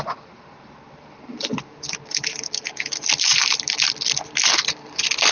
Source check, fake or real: real